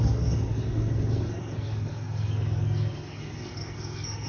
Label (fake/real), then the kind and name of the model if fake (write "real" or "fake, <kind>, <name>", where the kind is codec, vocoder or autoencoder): fake, codec, SNAC